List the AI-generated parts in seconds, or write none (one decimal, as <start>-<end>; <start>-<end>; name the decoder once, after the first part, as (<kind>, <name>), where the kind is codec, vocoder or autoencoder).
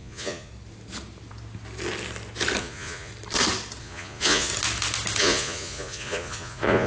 0.0-0.5 (vocoder, Vocos); 2.6-3.1; 3.8-4.5; 5.2-6.9